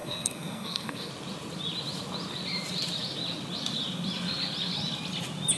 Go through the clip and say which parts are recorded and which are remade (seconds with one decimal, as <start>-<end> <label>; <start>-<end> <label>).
0.0-1.1 remade; 1.1-5.6 recorded